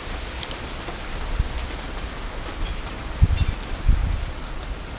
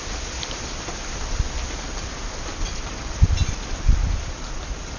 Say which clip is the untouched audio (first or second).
first